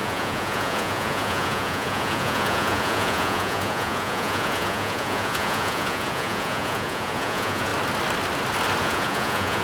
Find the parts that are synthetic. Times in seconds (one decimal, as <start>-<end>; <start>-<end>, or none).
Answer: 0.0-7.7; 8.8-9.6